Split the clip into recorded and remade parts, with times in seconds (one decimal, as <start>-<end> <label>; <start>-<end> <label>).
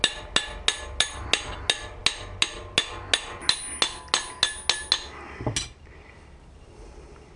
0.0-7.4 recorded